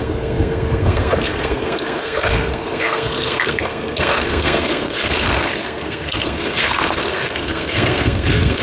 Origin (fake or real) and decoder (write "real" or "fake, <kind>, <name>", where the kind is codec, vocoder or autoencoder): fake, codec, SNAC